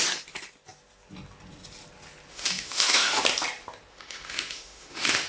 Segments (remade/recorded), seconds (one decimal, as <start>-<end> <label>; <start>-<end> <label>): 0.0-2.3 recorded; 2.3-3.2 remade; 3.2-3.9 recorded; 3.9-5.3 remade